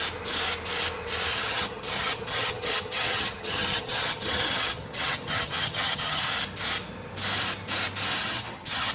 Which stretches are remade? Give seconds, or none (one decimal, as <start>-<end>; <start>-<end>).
1.3-6.3; 8.2-8.9